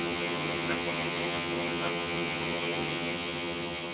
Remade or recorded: remade